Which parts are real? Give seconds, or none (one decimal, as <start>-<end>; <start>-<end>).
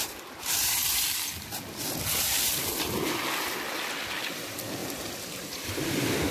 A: 0.0-4.8; 5.8-6.3